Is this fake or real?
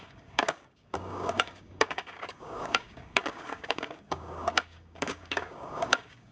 fake